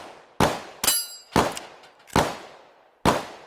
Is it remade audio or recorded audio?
recorded